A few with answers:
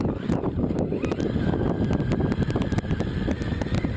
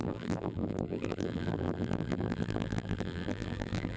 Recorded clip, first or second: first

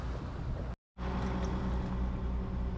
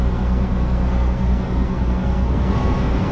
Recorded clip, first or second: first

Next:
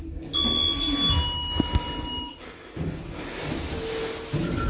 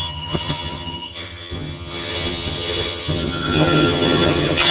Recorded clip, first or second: first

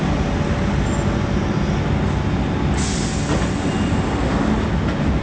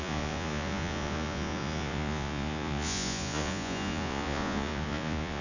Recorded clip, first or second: first